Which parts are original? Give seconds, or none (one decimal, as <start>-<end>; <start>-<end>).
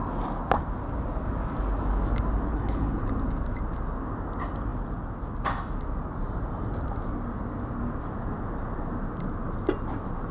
0.0-2.5; 3.1-10.3